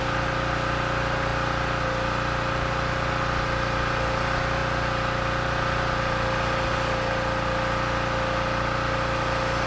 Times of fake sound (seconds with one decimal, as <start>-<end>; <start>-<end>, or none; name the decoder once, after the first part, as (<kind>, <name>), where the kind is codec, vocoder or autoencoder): none